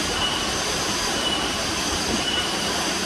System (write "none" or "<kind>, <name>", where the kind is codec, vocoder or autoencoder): none